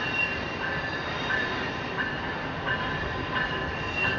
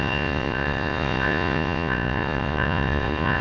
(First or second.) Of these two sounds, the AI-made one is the second